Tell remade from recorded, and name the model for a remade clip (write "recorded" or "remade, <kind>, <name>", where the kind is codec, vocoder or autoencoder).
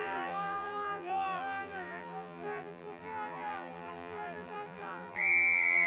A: remade, vocoder, BigVGAN v2